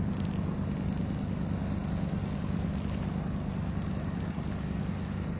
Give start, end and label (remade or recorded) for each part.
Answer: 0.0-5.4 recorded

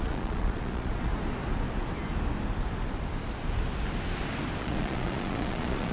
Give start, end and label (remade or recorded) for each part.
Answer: 0.0-1.1 remade; 1.1-4.6 recorded; 4.6-5.9 remade

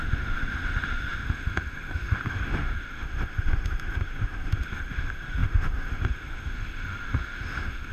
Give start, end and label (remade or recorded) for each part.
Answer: 0.0-7.9 remade

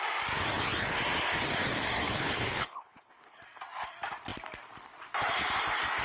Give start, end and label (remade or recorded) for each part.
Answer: 0.0-2.0 recorded; 2.0-3.4 remade; 3.4-6.0 recorded

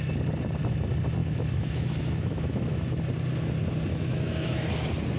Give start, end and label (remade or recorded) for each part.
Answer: 0.0-1.2 recorded; 1.2-3.0 remade; 3.0-3.9 recorded; 3.9-4.7 remade; 4.7-5.2 recorded

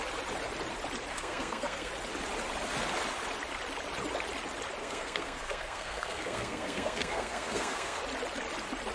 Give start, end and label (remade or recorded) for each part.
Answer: 0.0-1.1 recorded; 1.1-1.9 remade; 1.9-4.8 recorded; 4.8-8.0 remade; 8.0-8.9 recorded